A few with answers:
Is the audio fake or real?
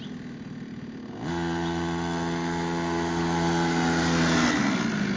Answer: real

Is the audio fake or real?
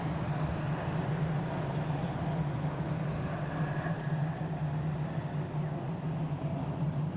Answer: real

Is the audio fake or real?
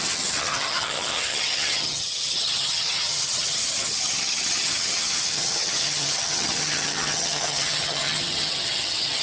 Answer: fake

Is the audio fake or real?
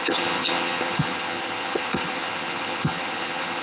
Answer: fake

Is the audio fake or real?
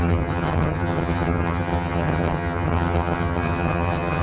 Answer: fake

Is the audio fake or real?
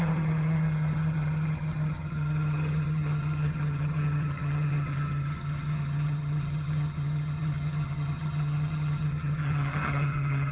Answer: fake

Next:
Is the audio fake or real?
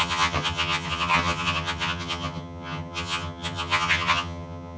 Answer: fake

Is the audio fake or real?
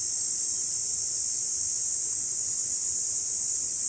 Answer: real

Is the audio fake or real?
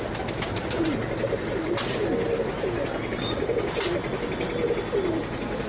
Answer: real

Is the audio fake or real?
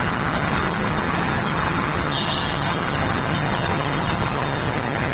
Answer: fake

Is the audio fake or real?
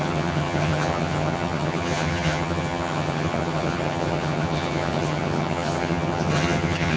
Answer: fake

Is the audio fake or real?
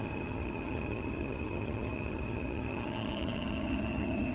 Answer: fake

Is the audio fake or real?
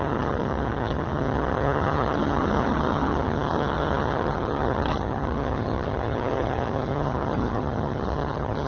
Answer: fake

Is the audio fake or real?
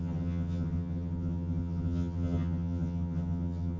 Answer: fake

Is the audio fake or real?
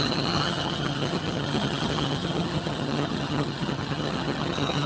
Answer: fake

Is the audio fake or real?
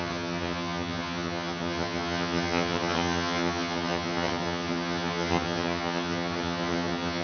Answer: fake